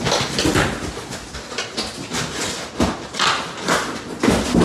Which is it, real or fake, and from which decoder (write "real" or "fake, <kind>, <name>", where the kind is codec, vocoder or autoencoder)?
real